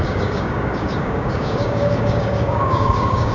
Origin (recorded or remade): remade